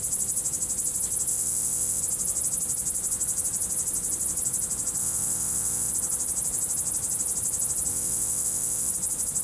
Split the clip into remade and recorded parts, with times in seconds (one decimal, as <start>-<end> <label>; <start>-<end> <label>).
0.0-1.3 recorded; 1.3-2.0 remade; 2.0-5.0 recorded; 5.0-5.9 remade; 5.9-7.9 recorded; 7.9-8.9 remade; 8.9-9.4 recorded